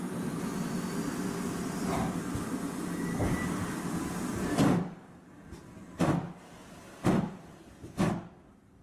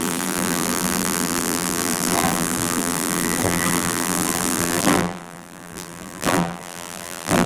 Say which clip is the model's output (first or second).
second